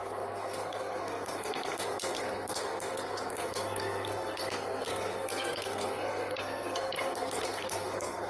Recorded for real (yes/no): no